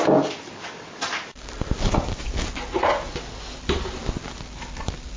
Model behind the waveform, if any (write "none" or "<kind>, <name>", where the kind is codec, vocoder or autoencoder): none